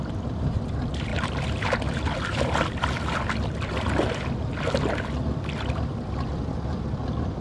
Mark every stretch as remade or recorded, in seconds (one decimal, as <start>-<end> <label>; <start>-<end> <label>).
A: 0.0-7.4 recorded